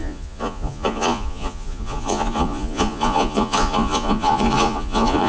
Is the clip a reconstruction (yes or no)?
yes